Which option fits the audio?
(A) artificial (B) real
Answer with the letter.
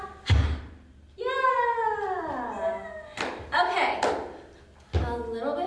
B